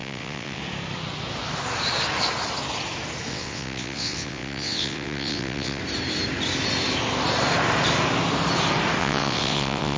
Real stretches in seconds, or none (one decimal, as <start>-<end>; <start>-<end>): 0.6-3.3; 5.8-9.0